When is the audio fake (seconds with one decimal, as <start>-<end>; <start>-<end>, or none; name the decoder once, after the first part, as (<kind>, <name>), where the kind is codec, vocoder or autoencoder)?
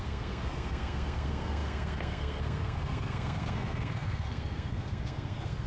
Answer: 0.0-5.7 (codec, SNAC)